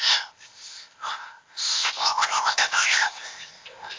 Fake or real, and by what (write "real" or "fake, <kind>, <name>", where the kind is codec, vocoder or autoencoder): fake, codec, ZipCodec